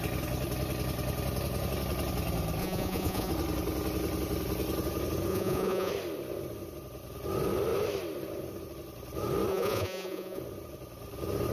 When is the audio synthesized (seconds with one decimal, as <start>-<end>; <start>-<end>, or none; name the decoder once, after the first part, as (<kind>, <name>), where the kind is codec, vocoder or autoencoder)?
2.6-3.3 (vocoder, Vocos); 5.3-5.9; 9.5-10.4